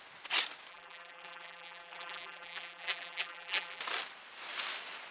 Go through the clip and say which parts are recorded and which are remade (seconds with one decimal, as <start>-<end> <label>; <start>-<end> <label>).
0.0-0.7 recorded; 0.7-3.8 remade; 3.8-5.1 recorded